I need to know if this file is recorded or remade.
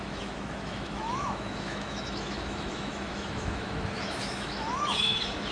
remade